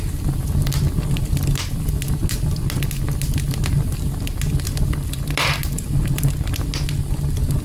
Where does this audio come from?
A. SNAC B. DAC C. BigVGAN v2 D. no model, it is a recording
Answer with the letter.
D